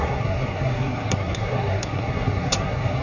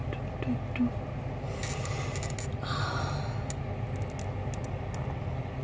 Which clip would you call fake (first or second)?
first